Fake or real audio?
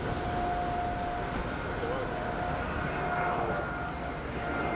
real